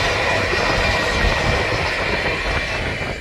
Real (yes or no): yes